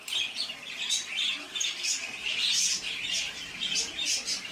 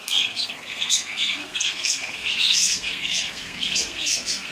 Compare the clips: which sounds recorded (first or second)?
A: first